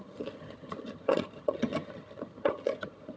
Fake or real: fake